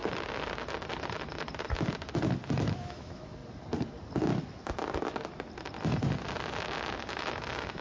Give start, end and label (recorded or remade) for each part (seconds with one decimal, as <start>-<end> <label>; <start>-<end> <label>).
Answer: 0.0-2.7 recorded; 2.7-3.4 remade; 3.4-6.9 recorded; 6.9-7.8 remade